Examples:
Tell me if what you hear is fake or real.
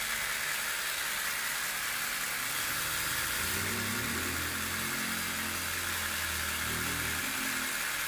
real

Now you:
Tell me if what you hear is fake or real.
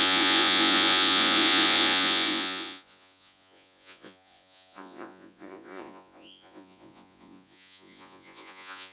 fake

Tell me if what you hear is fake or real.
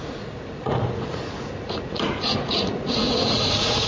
fake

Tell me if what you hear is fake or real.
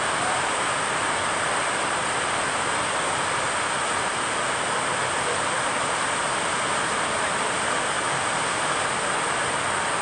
real